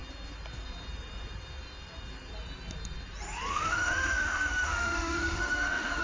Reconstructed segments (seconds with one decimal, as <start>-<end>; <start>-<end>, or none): 3.5-6.0